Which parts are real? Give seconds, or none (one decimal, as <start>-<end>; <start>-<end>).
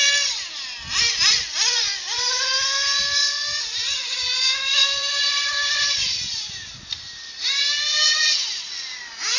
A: 0.0-4.8; 8.7-9.4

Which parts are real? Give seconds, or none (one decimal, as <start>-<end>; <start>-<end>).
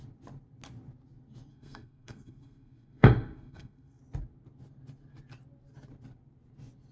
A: 0.0-1.5; 4.0-6.9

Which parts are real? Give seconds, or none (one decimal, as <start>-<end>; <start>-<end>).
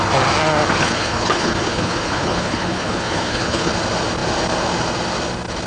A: 0.0-0.8; 3.7-5.7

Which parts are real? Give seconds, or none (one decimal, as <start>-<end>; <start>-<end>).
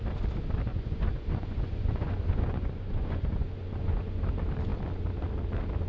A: 0.0-0.7; 4.2-5.9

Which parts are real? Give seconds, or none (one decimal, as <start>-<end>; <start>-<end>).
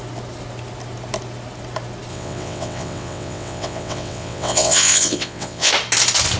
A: 0.0-2.1; 5.7-6.4